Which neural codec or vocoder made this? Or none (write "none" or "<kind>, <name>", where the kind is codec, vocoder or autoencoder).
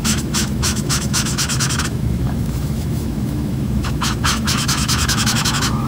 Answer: autoencoder, DAC-VAE